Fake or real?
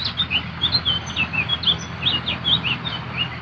real